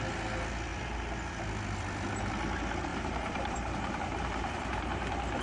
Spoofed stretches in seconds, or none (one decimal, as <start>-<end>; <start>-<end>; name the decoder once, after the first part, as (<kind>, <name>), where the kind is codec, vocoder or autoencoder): 2.9-5.4 (vocoder, BigVGAN v2)

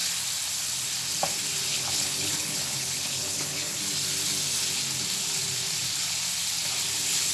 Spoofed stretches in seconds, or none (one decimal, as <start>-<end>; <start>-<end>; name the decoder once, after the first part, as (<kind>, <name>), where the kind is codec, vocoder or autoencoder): 1.7-3.8 (codec, HILCodec)

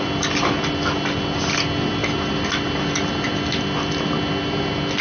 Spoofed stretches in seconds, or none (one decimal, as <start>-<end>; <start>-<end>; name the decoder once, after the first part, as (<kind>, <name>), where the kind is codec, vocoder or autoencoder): none

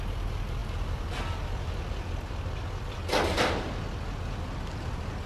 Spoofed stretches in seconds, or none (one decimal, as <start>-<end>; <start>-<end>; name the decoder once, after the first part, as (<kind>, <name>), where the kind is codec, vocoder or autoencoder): none

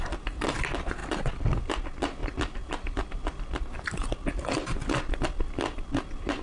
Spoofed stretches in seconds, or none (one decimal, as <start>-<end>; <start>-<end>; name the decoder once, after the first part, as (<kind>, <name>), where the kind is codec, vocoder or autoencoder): 1.0-1.6 (vocoder, BigVGAN v2); 2.2-3.4

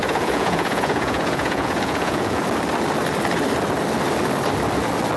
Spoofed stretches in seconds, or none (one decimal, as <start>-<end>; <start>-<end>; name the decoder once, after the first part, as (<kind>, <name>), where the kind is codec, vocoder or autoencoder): 0.0-2.4 (vocoder, Vocos)

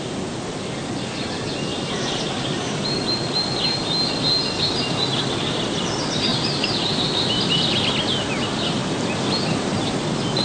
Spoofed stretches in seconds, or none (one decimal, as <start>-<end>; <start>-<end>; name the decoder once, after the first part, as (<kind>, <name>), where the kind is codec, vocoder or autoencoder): 1.7-3.0 (vocoder, BigVGAN v2); 6.3-7.4

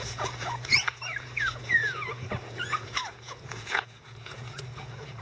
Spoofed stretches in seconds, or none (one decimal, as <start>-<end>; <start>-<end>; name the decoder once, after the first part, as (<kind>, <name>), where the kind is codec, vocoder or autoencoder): 0.0-0.7 (vocoder, Vocos); 1.2-5.2